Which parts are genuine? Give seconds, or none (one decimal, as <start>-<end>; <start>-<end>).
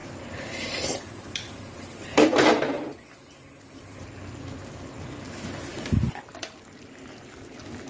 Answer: 4.1-7.9